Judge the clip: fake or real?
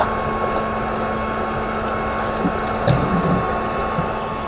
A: real